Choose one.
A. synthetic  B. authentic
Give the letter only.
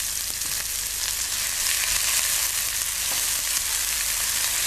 B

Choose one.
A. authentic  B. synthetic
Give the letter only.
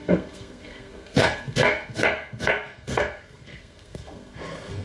B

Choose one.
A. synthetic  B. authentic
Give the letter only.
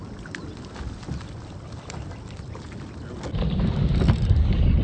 B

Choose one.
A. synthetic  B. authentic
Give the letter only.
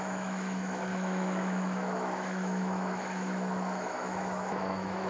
A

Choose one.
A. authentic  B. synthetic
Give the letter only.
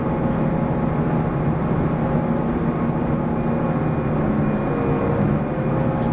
A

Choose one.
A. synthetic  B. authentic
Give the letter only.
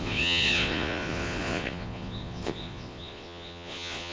A